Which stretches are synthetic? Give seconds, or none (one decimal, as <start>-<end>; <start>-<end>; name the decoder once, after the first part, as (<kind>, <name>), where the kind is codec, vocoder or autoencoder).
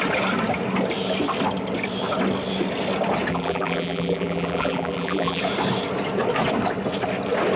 3.3-5.4 (vocoder, BigVGAN v2)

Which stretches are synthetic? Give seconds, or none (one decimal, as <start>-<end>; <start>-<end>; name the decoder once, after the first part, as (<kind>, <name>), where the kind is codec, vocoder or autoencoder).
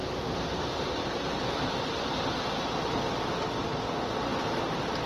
0.0-2.1 (vocoder, BigVGAN v2)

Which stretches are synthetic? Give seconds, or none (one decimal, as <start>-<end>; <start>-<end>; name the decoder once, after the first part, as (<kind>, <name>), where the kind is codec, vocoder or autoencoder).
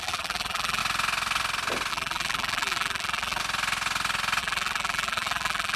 0.0-0.8 (vocoder, BigVGAN v2); 1.9-3.4; 4.4-5.8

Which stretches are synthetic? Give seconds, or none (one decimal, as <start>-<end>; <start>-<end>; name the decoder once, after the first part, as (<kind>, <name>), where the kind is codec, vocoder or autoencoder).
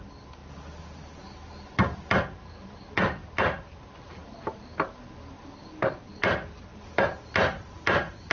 0.4-2.0 (vocoder, BigVGAN v2); 3.2-3.8; 4.2-5.9